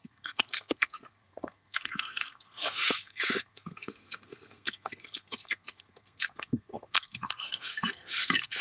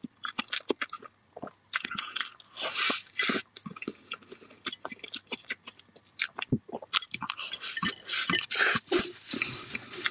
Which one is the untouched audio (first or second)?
second